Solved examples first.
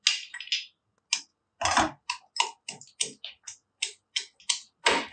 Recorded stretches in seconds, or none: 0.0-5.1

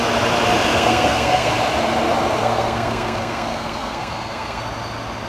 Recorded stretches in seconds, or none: 0.0-0.7; 1.5-2.4; 4.6-5.3

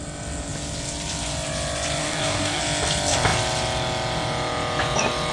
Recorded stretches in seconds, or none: 0.0-2.0; 2.6-5.3

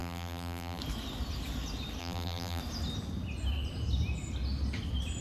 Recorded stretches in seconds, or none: 0.8-2.0; 2.6-5.2

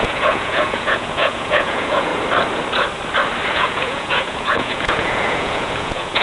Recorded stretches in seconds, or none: 2.1-3.5

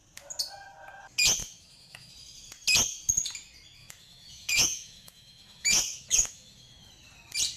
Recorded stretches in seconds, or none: 0.0-1.4; 2.1-3.8; 6.9-7.6

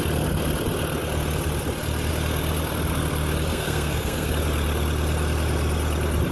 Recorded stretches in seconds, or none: 0.0-3.5; 4.3-6.3

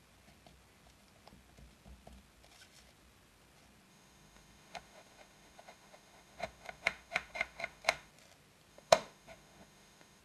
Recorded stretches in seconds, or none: 0.0-3.9; 8.1-8.7